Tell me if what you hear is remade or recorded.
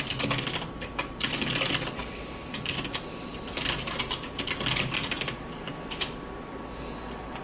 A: recorded